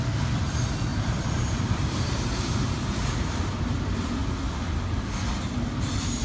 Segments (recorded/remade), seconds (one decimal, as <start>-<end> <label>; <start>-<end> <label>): 0.0-0.9 recorded; 0.9-3.4 remade; 3.4-6.2 recorded